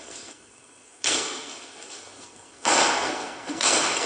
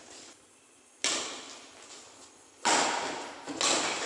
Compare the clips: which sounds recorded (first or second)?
second